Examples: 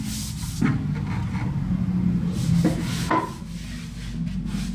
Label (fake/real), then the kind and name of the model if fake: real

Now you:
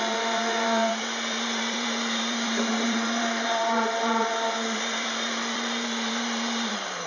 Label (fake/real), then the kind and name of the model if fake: fake, vocoder, BigVGAN v2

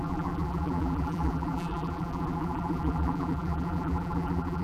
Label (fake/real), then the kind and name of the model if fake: fake, vocoder, BigVGAN v2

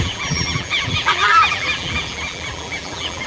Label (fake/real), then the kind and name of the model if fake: fake, vocoder, BigVGAN v2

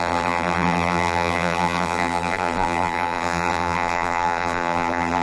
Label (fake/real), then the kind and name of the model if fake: fake, vocoder, BigVGAN v2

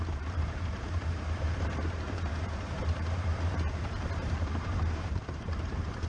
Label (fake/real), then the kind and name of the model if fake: fake, vocoder, BigVGAN v2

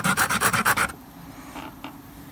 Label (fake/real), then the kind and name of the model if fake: fake, vocoder, BigVGAN v2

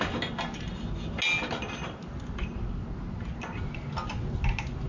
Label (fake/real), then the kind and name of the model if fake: real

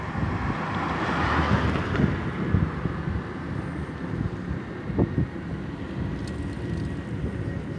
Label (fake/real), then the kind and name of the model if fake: real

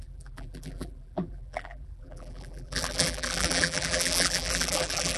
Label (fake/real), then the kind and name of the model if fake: fake, vocoder, BigVGAN v2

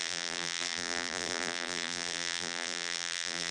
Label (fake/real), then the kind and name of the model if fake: fake, vocoder, BigVGAN v2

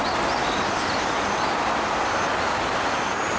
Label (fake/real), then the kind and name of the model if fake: real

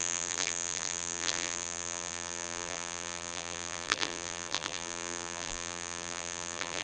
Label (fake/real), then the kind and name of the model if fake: fake, vocoder, BigVGAN v2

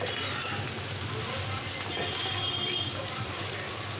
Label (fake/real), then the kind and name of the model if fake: fake, vocoder, BigVGAN v2